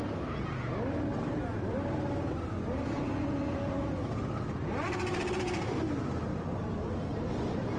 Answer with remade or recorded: recorded